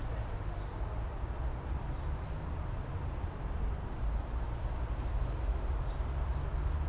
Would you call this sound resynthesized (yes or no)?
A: no